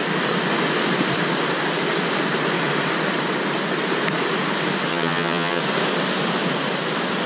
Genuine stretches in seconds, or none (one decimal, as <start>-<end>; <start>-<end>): 0.0-4.9; 5.6-7.3